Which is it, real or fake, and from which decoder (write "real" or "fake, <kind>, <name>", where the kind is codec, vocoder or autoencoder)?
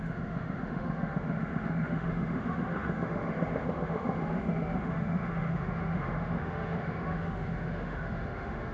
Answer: fake, autoencoder, DAC-VAE